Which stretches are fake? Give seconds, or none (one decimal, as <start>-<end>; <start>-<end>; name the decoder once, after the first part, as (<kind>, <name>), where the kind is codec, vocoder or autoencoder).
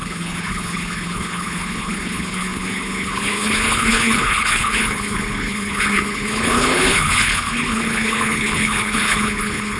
0.0-9.8 (codec, HILCodec)